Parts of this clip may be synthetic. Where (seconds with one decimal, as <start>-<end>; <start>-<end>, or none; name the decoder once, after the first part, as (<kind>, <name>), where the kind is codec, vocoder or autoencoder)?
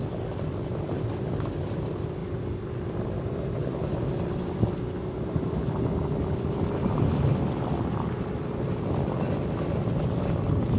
none